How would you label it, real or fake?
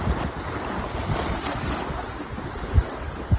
real